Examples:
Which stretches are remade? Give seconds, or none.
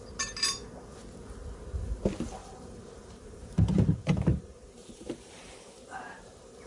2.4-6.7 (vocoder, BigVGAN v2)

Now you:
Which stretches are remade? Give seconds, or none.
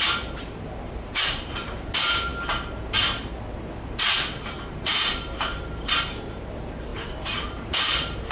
0.0-2.3 (vocoder, BigVGAN v2); 4.3-8.3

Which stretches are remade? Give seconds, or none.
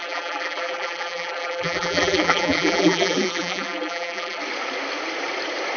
0.0-4.4 (vocoder, BigVGAN v2)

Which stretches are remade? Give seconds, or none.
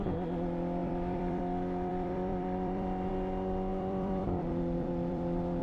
0.8-1.4 (vocoder, BigVGAN v2); 1.9-3.1; 3.7-5.6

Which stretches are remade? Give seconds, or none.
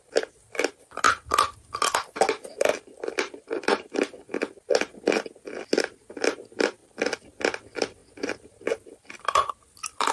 2.7-4.7 (vocoder, BigVGAN v2); 6.8-7.4; 8.0-9.5